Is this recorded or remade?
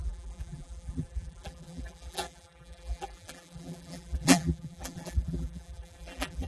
remade